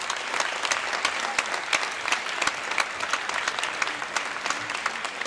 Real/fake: real